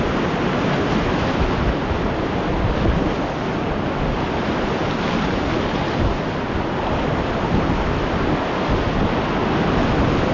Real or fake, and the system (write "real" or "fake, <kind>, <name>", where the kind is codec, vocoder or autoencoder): real